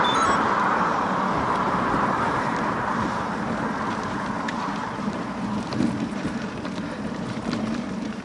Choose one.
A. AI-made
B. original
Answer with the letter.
A